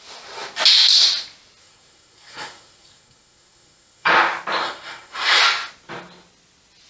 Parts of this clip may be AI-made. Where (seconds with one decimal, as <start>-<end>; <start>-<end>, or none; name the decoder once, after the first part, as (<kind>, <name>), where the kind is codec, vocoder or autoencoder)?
1.6-4.1 (codec, SNAC); 4.6-5.4